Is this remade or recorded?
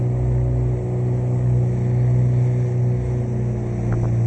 recorded